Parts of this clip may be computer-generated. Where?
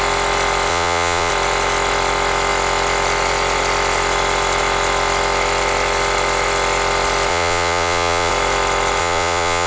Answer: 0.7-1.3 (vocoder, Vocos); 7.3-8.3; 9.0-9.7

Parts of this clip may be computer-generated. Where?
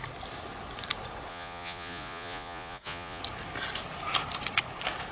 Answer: 1.3-3.2 (vocoder, Vocos)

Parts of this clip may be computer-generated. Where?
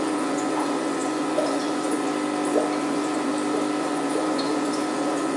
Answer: 0.0-2.1 (vocoder, Vocos); 2.8-3.3; 3.8-5.4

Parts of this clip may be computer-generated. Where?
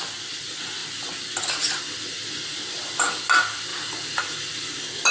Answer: none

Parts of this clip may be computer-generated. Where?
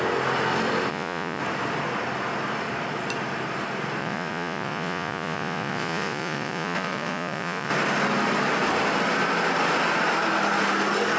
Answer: 0.9-1.4 (vocoder, Vocos); 4.0-7.7